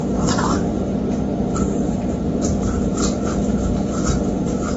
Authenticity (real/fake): fake